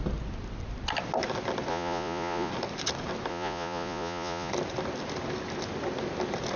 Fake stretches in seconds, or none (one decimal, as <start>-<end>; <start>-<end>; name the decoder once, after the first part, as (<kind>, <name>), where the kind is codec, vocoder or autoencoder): 1.7-2.5 (vocoder, Vocos); 3.3-4.5